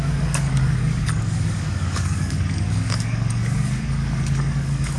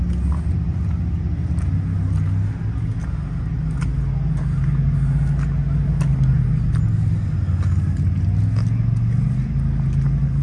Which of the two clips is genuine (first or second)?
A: second